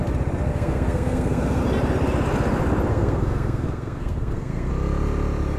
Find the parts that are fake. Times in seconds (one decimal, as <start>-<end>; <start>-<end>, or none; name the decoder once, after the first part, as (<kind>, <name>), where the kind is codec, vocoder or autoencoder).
0.5-1.6 (codec, SNAC); 2.9-4.7